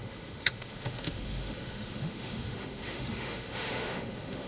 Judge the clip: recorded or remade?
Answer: remade